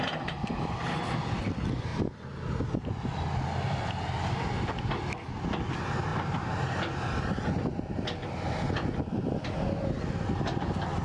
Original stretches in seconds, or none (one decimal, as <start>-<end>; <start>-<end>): 0.0-11.0